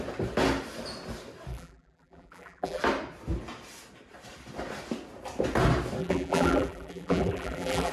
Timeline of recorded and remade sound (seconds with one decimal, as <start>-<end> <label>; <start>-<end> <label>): 0.0-1.5 recorded; 1.5-2.8 remade; 2.8-6.0 recorded; 6.0-7.9 remade